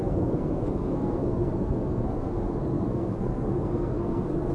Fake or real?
fake